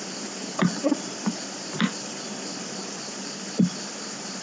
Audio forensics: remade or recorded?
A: remade